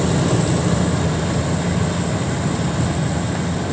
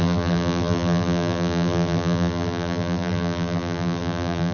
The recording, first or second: first